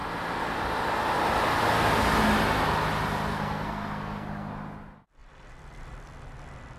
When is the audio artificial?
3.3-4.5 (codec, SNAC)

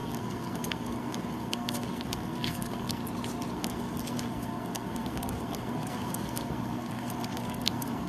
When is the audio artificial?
0.0-3.0 (codec, SNAC); 3.5-8.1

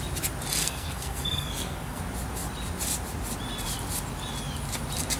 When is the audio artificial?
0.6-2.0 (codec, SNAC)

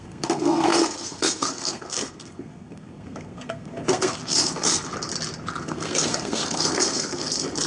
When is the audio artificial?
0.0-4.9 (codec, SNAC); 5.6-7.7

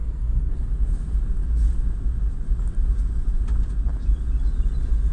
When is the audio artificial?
0.0-0.5 (codec, SNAC)

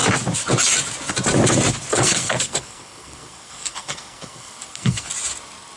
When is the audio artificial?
1.9-5.1 (codec, SNAC)

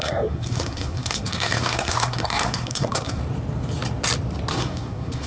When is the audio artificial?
0.0-3.2 (codec, SNAC); 4.5-5.3